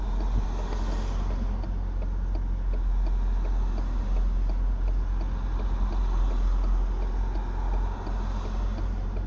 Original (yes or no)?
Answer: yes